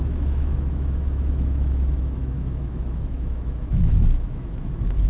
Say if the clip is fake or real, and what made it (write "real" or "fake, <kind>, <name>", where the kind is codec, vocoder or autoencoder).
fake, autoencoder, DAC-VAE